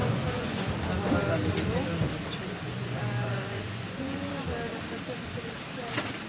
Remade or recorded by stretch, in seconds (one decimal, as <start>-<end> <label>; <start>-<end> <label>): 0.0-0.7 remade; 0.7-2.4 recorded; 2.4-4.3 remade; 4.3-6.3 recorded